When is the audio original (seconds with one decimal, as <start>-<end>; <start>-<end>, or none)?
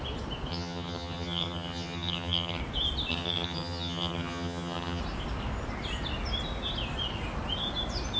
0.0-0.5; 2.6-3.1; 5.0-8.2